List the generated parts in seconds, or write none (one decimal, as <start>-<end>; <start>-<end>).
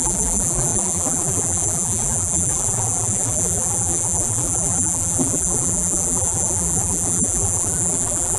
0.0-8.4